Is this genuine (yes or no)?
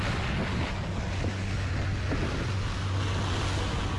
yes